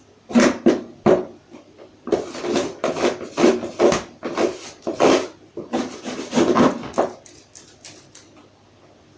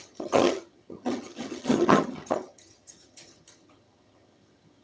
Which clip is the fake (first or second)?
second